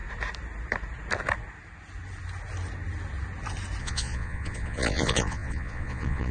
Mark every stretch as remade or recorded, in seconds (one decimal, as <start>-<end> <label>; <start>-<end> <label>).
0.0-3.8 recorded; 3.8-6.3 remade